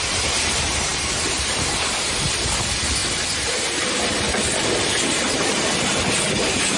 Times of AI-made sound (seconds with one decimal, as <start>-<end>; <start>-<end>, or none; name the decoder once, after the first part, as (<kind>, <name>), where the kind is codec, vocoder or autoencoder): none